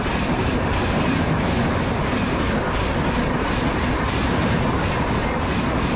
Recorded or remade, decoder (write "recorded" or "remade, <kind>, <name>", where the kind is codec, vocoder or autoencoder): recorded